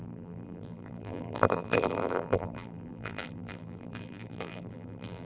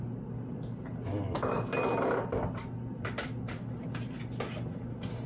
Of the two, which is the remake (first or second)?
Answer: first